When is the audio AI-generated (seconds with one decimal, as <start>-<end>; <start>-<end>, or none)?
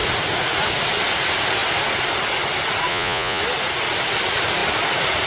2.9-3.4